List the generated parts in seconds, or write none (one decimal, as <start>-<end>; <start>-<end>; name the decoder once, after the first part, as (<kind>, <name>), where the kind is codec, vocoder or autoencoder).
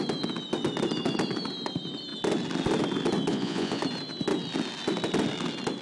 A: 3.3-3.8 (vocoder, Vocos)